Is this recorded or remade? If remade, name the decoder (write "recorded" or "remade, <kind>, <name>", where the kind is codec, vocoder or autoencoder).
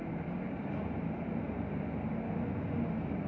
recorded